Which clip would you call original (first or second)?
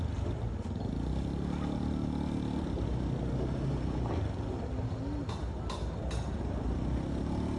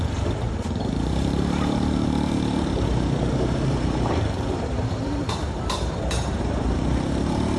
first